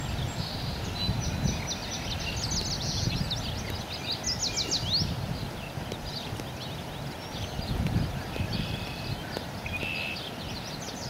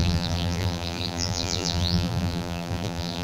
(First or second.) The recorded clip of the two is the first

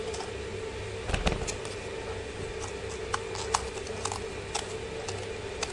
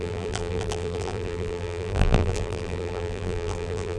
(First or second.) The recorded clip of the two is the first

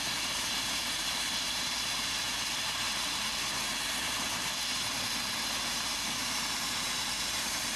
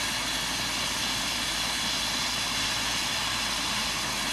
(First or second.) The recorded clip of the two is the second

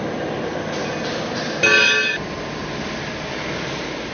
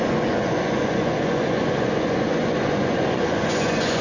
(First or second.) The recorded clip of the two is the first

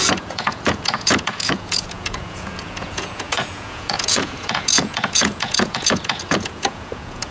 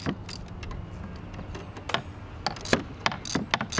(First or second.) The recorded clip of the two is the second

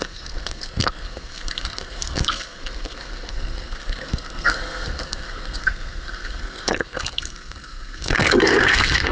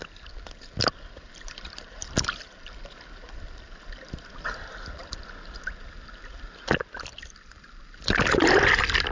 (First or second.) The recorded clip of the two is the second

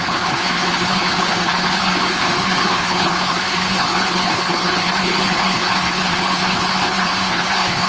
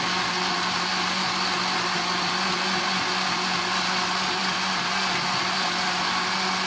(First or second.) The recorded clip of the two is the second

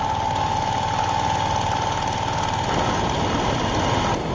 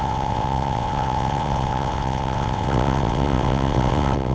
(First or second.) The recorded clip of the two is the first